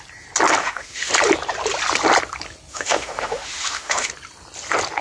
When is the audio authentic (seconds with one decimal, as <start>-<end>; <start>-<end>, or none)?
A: 0.0-0.6; 1.1-2.7; 4.1-5.0